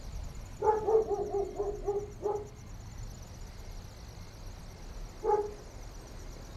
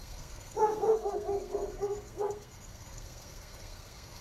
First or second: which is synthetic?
second